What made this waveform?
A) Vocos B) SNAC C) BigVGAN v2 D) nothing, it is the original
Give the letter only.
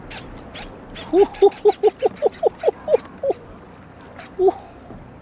D